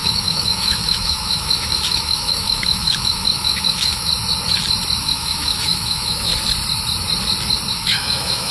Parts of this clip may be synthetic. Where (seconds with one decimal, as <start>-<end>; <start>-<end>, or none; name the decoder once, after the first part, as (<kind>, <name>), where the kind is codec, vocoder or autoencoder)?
0.0-4.1 (autoencoder, DAC-VAE); 5.0-6.3; 7.7-8.5